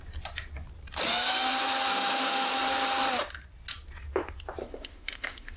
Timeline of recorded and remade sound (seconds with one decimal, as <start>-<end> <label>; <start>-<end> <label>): 0.0-1.9 recorded; 1.9-2.5 remade; 2.5-4.6 recorded; 4.6-5.6 remade